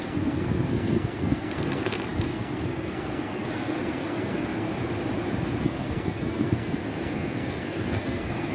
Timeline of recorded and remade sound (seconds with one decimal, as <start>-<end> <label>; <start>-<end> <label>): 0.0-4.7 remade; 4.7-5.6 recorded; 5.6-8.5 remade